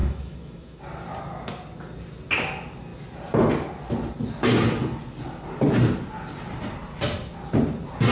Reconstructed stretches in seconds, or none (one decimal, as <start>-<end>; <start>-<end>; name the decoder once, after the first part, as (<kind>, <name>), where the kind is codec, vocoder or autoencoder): 0.0-0.8 (autoencoder, DAC-VAE)